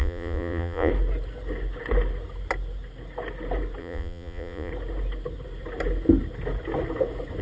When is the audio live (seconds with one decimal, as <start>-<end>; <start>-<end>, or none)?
0.9-3.8; 4.7-7.4